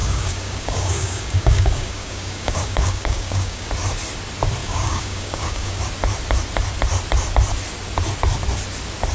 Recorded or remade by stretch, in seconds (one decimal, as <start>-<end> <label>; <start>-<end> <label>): 0.0-3.7 remade; 3.7-4.6 recorded; 4.6-5.8 remade; 5.8-9.1 recorded